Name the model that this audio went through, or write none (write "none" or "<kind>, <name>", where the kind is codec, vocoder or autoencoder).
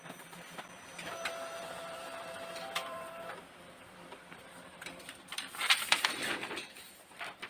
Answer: vocoder, BigVGAN v2